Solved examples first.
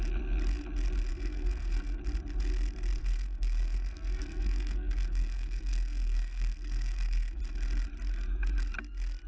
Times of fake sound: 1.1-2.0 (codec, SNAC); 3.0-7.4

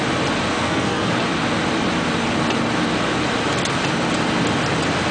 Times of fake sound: 0.5-1.1 (codec, SNAC)

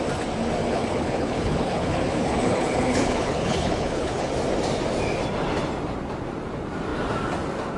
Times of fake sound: 0.6-4.3 (codec, HILCodec)